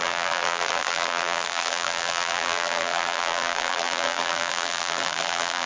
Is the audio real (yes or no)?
no